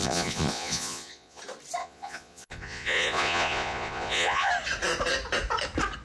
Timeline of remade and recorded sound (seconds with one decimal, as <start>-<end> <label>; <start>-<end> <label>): 0.0-1.4 remade; 1.4-1.8 recorded; 1.8-4.5 remade; 4.5-6.0 recorded